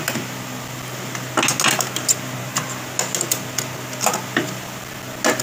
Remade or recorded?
recorded